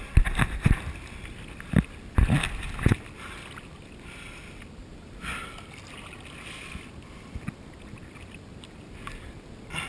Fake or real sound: real